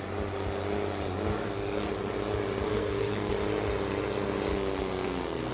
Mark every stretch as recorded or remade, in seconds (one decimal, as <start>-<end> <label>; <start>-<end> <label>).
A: 0.0-1.3 recorded; 1.3-1.9 remade; 1.9-2.7 recorded; 2.7-3.3 remade; 3.3-4.5 recorded; 4.5-5.5 remade